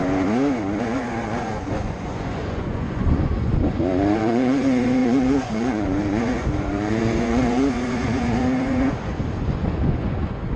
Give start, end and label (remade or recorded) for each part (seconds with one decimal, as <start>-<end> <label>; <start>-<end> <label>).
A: 0.0-0.8 recorded; 0.8-10.6 remade